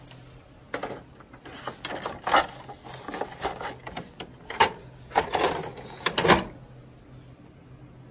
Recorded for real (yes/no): yes